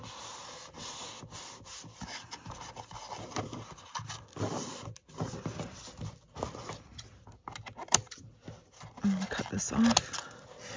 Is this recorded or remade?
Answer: recorded